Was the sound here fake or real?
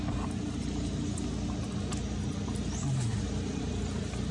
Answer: real